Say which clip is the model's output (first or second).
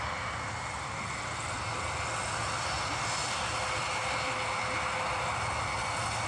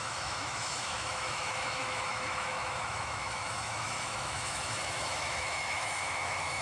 second